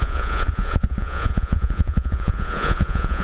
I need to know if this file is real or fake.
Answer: fake